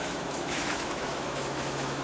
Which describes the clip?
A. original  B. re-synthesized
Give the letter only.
B